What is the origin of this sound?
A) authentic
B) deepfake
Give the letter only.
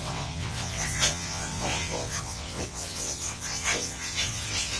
B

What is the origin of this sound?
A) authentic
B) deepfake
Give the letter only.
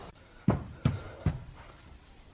A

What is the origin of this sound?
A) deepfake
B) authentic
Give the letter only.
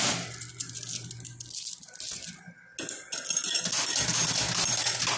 B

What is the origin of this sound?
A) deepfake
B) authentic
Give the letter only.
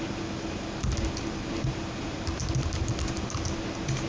B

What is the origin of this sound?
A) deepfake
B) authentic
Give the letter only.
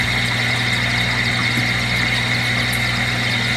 B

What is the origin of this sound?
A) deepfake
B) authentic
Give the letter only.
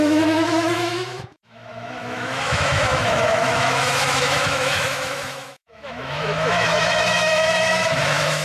A